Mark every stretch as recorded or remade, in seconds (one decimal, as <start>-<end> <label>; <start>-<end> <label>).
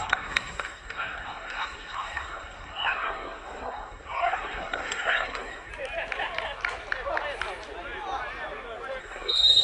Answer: 0.0-5.7 remade; 5.7-9.0 recorded; 9.0-9.6 remade